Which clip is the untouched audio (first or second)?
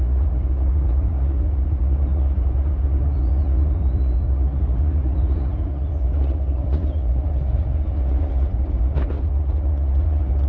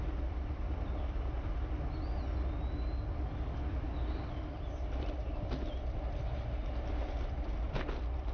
second